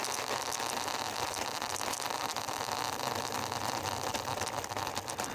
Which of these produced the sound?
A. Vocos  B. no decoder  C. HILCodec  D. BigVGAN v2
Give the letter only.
B